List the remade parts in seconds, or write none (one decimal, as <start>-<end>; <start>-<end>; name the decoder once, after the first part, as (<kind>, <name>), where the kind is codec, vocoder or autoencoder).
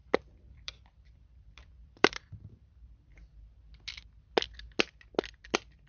0.0-3.5 (vocoder, BigVGAN v2)